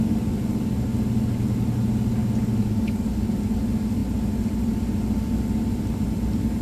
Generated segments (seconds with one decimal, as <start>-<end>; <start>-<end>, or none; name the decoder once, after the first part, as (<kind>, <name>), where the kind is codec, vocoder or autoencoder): 2.2-3.3 (codec, DAC)